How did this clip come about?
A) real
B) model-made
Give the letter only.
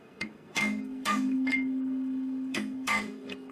B